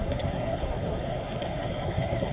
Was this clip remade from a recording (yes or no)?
yes